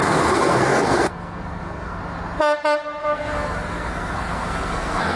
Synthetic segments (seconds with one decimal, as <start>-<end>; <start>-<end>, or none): 0.0-2.0; 3.0-5.2